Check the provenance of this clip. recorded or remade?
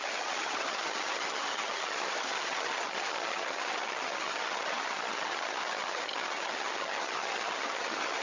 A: remade